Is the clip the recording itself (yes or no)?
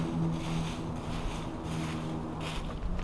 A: yes